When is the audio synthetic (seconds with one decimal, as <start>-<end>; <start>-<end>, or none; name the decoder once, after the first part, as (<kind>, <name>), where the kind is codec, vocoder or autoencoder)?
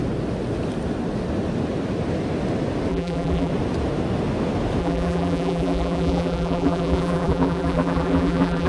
2.9-3.5 (vocoder, BigVGAN v2); 4.8-8.7